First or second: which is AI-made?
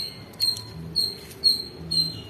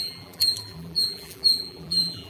second